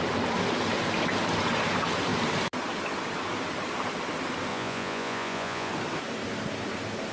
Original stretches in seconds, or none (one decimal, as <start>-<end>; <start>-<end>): 0.0-4.5; 5.7-7.1